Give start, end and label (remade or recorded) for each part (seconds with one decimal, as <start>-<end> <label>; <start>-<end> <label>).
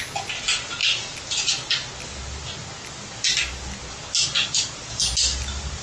0.0-5.8 recorded